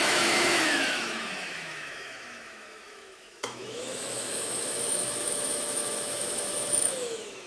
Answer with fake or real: fake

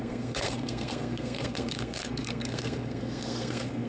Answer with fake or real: fake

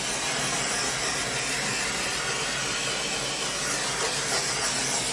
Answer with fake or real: real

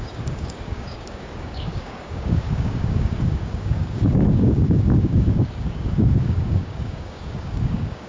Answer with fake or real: fake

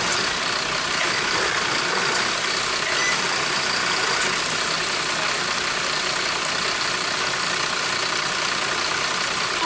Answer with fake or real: real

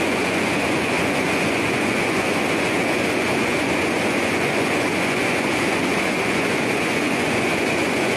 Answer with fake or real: fake